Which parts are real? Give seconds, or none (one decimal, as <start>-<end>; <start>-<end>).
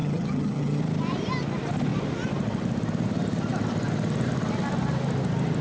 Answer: 0.8-5.6